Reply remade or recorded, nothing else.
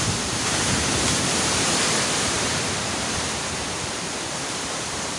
remade